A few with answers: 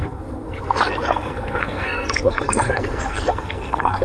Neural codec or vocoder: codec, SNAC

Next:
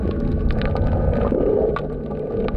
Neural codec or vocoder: none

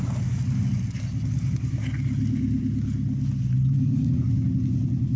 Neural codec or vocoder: none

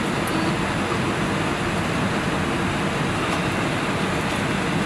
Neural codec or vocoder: none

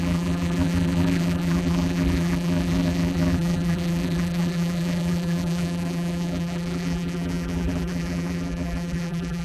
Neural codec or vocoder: vocoder, BigVGAN v2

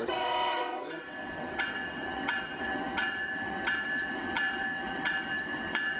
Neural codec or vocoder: vocoder, WaveNeXt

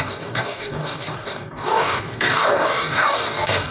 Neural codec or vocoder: codec, DAC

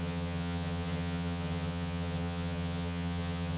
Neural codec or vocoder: vocoder, HiFi-GAN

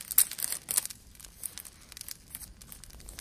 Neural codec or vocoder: none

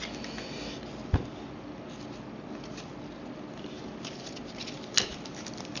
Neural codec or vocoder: none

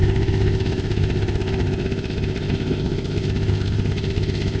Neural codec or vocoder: codec, ZipCodec